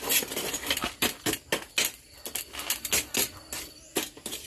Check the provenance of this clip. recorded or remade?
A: recorded